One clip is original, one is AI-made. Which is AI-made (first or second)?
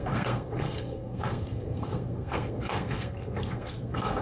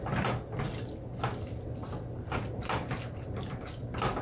first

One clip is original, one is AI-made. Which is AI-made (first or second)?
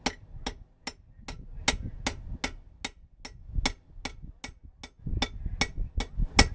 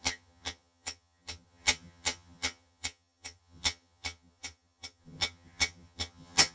second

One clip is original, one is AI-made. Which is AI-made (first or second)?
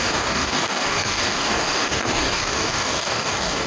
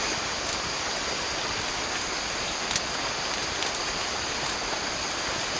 first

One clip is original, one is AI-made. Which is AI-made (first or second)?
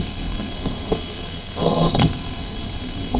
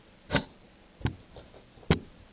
first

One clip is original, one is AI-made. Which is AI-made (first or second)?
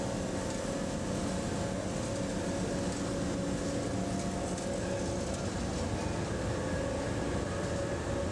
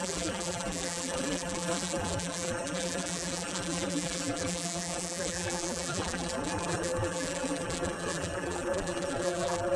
second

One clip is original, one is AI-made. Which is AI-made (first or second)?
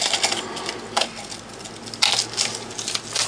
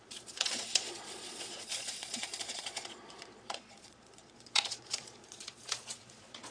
second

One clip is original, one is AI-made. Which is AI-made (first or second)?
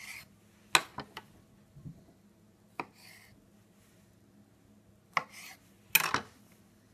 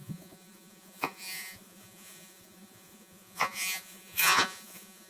second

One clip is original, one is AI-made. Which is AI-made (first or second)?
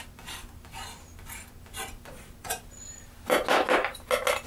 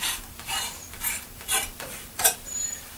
second